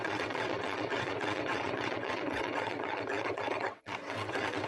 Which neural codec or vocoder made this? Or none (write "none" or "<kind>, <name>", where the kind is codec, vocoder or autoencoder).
vocoder, WaveNeXt